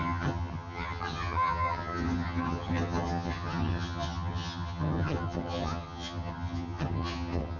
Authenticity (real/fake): fake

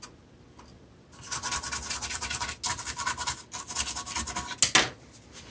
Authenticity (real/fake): real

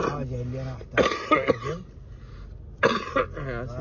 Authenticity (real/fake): real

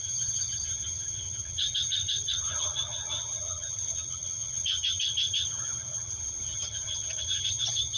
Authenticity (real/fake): fake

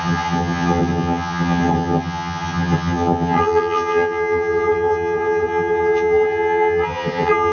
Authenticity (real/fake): fake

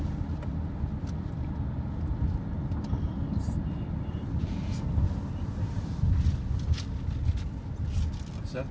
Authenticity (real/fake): real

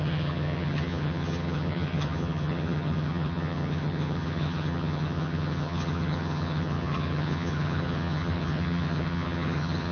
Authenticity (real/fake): fake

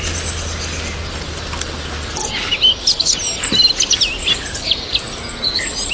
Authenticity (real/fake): real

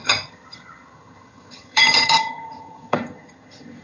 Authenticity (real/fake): fake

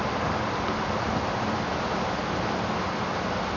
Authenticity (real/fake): real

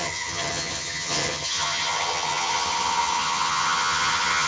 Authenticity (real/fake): fake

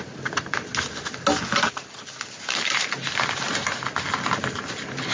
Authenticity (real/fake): real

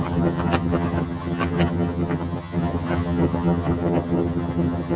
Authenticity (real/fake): fake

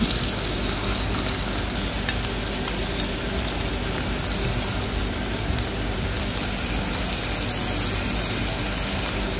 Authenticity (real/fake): real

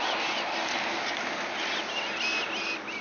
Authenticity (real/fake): real